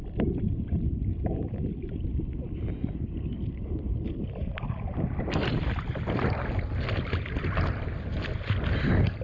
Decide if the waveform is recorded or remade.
recorded